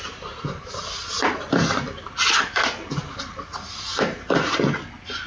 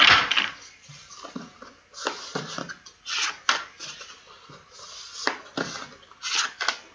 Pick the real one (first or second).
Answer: second